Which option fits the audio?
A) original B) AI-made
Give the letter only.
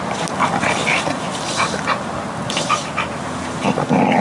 A